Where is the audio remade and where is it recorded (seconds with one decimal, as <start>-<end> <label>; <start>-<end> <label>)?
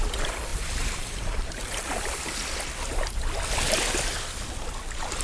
0.0-0.5 recorded; 0.5-1.9 remade; 1.9-5.2 recorded